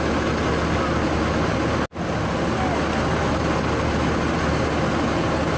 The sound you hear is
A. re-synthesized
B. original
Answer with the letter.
B